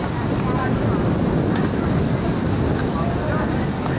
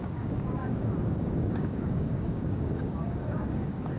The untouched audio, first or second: first